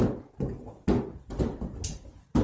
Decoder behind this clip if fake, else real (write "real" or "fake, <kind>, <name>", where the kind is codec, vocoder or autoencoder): real